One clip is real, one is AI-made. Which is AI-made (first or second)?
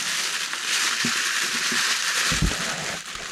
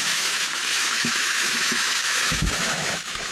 second